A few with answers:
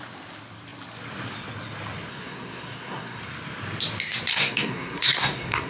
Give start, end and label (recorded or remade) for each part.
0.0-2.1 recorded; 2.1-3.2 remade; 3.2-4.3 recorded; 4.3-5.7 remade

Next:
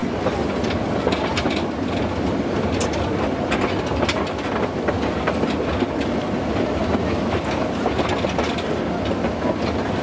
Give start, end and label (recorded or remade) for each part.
0.0-10.0 recorded

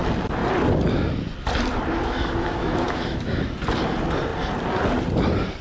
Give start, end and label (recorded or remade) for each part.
0.0-2.0 recorded; 2.0-3.6 remade; 3.6-5.6 recorded

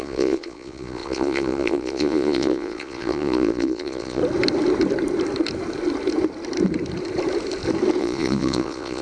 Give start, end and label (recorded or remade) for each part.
0.0-4.2 remade; 4.2-8.0 recorded; 8.0-9.0 remade

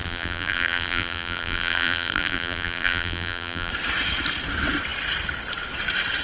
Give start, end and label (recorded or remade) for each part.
0.0-3.7 remade; 3.7-6.2 recorded